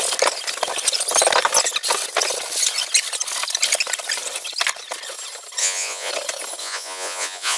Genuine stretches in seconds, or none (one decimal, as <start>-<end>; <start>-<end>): 0.0-5.6; 6.1-6.6